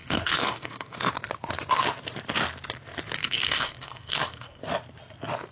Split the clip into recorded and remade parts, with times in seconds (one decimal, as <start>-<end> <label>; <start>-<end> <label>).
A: 0.0-1.1 remade; 1.1-3.2 recorded; 3.2-4.6 remade; 4.6-5.5 recorded

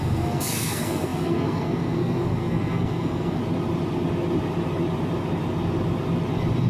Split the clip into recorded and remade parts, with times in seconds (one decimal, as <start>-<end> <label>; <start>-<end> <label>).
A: 0.0-3.4 remade; 3.4-6.7 recorded

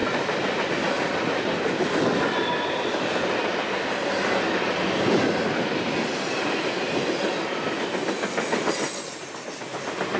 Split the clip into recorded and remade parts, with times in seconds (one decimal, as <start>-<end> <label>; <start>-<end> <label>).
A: 0.0-10.2 recorded

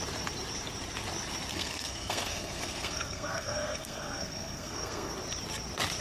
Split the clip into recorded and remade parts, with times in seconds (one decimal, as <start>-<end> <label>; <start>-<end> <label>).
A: 0.0-1.5 recorded; 1.5-5.1 remade; 5.1-6.0 recorded